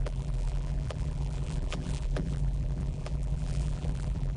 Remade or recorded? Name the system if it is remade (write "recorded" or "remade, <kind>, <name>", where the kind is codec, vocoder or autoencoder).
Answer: remade, vocoder, BigVGAN v2